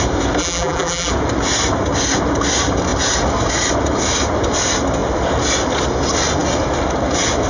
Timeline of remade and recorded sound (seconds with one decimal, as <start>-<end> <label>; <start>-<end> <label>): 0.0-0.4 recorded; 0.4-1.1 remade; 1.1-7.5 recorded